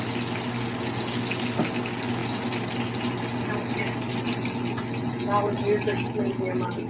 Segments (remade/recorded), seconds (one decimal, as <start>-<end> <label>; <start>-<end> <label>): 0.0-6.9 recorded